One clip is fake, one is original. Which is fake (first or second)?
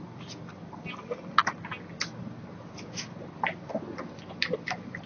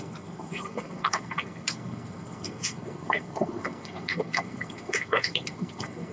second